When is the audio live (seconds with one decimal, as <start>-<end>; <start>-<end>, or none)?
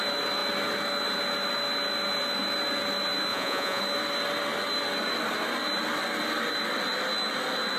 0.0-3.3; 3.8-7.8